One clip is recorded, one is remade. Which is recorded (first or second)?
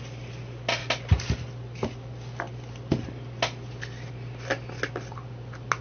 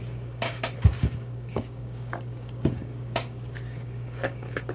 first